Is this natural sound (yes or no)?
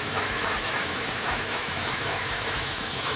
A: no